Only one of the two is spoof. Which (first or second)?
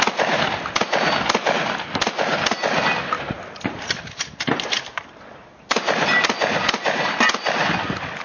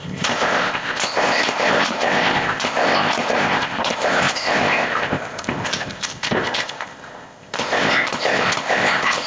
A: second